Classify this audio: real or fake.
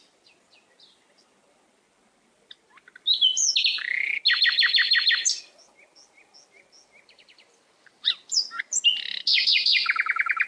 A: real